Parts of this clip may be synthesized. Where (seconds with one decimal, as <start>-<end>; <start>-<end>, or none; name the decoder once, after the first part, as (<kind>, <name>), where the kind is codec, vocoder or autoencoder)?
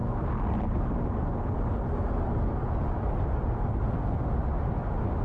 none